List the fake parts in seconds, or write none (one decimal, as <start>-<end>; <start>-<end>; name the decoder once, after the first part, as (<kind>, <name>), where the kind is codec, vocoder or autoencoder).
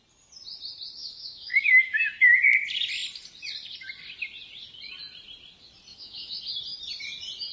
1.0-2.0 (autoencoder, DAC-VAE); 5.9-6.4